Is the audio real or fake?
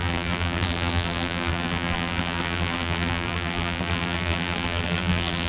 fake